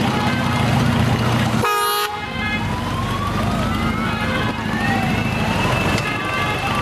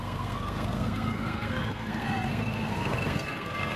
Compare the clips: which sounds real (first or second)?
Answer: first